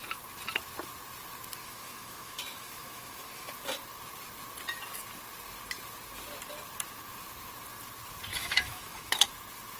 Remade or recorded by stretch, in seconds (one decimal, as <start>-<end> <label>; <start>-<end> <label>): 0.0-1.6 recorded; 1.6-3.5 remade; 3.5-8.3 recorded; 8.3-9.3 remade; 9.3-9.8 recorded